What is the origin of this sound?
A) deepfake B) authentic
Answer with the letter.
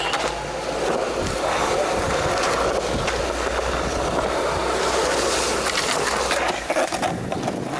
B